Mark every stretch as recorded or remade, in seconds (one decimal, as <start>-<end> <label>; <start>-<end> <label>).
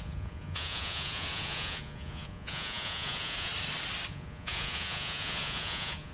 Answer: 0.0-3.5 remade; 3.5-4.1 recorded; 4.1-6.1 remade